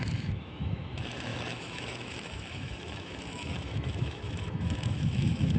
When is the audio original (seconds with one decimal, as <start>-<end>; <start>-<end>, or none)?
none

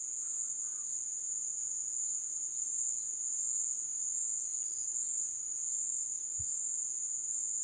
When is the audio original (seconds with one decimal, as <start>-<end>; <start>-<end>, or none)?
5.9-6.6

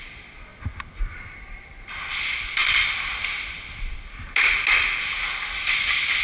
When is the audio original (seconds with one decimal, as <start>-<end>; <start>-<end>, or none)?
0.0-6.2